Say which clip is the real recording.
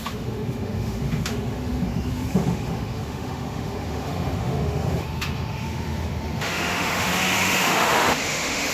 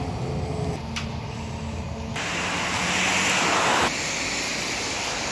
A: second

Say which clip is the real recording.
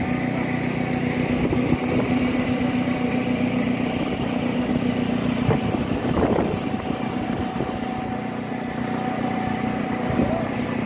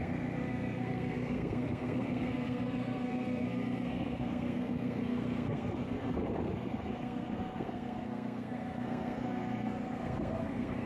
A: first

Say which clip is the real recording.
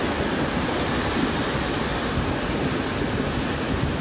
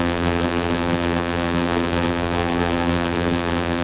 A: first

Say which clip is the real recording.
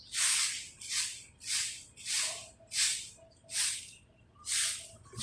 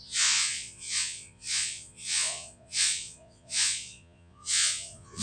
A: first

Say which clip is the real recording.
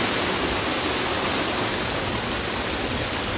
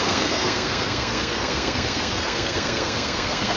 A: first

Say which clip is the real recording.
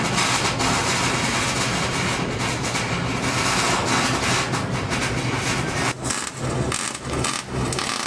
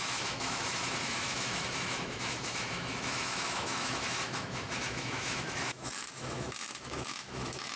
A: first